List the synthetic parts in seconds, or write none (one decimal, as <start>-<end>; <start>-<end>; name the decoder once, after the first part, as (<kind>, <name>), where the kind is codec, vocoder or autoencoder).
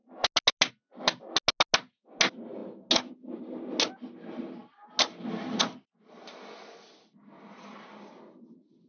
none